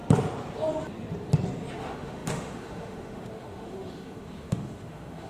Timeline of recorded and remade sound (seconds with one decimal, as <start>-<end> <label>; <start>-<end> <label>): 0.0-1.7 recorded; 1.7-5.3 remade